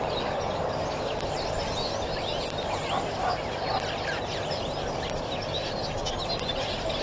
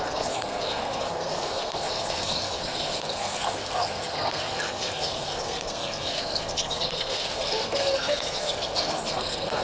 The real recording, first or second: first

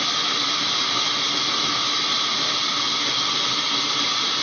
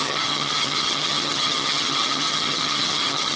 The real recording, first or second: first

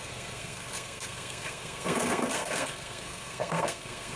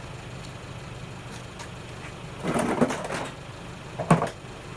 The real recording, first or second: second